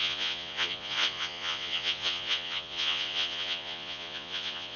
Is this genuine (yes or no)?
no